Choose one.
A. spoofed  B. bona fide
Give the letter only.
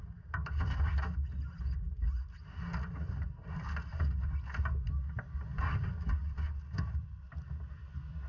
B